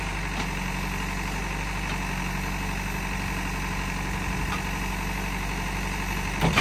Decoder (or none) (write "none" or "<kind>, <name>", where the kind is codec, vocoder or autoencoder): none